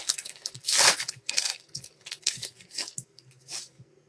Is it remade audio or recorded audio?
remade